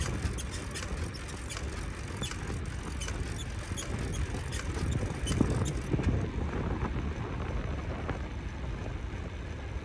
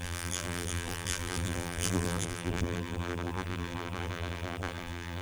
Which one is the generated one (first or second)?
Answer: second